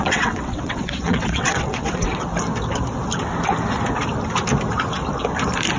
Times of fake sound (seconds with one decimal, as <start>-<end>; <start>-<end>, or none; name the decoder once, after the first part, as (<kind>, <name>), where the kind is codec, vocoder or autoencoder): 0.0-2.3 (vocoder, WaveNeXt)